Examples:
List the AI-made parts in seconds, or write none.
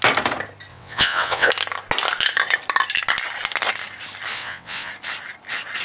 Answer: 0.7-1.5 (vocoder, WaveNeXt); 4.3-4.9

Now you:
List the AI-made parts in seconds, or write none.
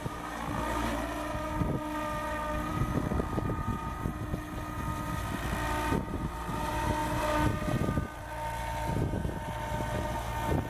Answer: none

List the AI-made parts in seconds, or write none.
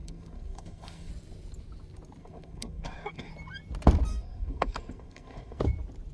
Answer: 0.0-1.1 (codec, SNAC); 2.2-3.3; 4.1-5.6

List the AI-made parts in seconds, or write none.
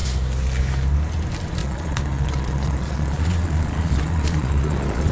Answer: 1.6-5.1 (vocoder, Vocos)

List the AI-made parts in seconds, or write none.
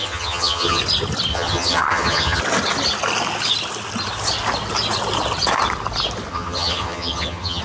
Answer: 0.0-0.8 (vocoder, HiFi-GAN); 1.3-2.4; 6.3-7.6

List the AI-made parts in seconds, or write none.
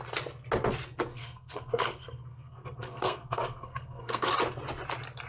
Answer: 1.1-4.3 (codec, SNAC)